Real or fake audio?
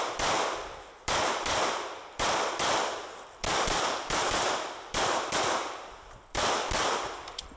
fake